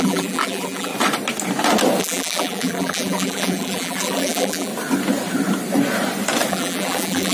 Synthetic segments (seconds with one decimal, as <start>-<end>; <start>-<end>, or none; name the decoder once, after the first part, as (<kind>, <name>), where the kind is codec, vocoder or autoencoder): 0.0-0.9 (vocoder, BigVGAN v2); 2.0-4.7; 6.5-7.3